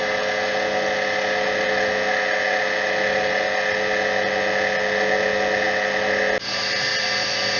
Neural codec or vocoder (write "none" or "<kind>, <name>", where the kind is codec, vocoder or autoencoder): none